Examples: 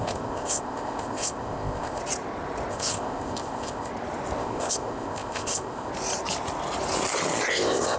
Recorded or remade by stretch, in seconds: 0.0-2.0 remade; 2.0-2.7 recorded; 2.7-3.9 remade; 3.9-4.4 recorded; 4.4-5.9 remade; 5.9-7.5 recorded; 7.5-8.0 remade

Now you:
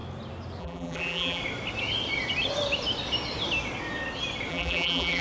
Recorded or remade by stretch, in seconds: 0.0-0.6 recorded; 0.6-1.4 remade; 1.4-4.5 recorded; 4.5-5.2 remade

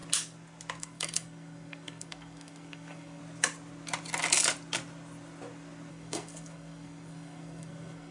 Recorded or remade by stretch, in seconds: 0.0-0.8 recorded; 0.8-3.2 remade; 3.2-5.9 recorded; 5.9-8.1 remade

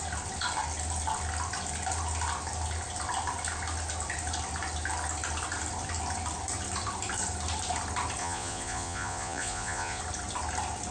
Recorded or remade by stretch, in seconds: 0.0-8.2 recorded; 8.2-10.0 remade; 10.0-10.9 recorded

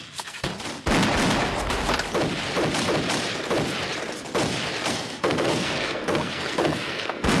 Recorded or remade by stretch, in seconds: 0.0-0.5 remade; 0.5-4.9 recorded; 4.9-7.4 remade